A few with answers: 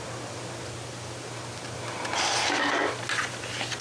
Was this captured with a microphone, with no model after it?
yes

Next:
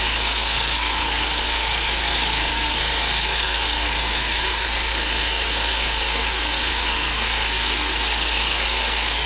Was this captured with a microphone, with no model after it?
no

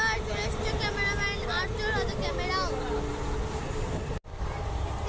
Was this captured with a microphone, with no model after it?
yes